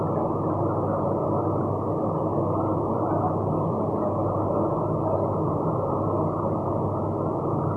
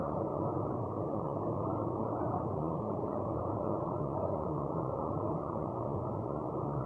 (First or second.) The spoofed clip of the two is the second